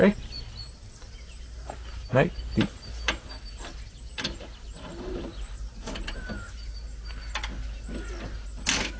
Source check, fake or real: real